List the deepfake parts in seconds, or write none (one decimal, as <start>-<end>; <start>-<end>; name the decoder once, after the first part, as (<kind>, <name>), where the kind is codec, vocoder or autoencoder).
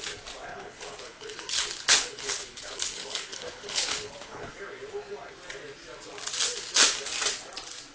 0.5-4.5 (codec, HILCodec)